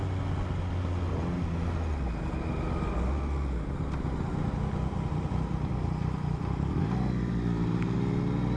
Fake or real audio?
real